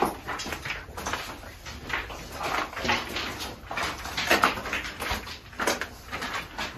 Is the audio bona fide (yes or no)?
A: yes